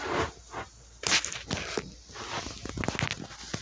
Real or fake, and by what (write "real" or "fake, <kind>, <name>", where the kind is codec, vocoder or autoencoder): real